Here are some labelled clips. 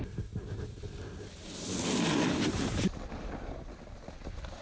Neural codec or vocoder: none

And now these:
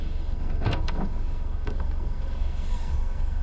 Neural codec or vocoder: codec, SNAC